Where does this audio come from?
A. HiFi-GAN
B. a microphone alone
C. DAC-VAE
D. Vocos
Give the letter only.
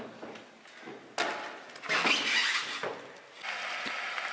B